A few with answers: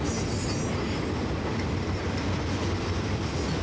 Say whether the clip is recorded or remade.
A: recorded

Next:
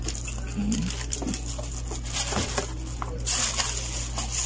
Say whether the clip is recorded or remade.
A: recorded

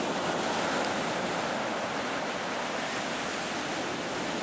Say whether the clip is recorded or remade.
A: recorded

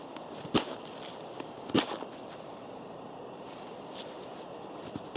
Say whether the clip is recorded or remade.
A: recorded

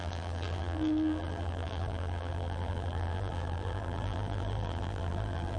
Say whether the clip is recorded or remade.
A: remade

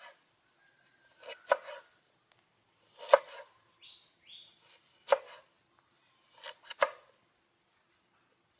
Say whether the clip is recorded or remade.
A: recorded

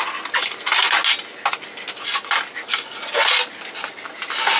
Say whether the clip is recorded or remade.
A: recorded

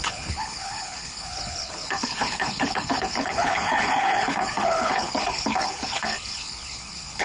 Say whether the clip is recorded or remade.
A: remade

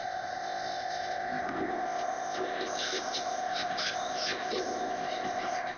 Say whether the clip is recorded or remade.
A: remade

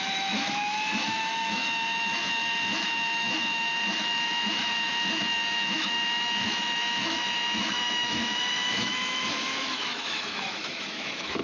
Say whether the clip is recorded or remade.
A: remade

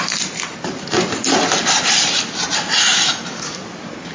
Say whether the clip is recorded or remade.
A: recorded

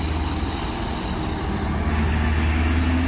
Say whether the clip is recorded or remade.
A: recorded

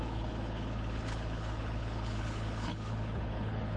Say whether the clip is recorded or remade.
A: remade